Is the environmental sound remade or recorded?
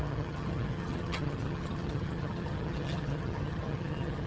remade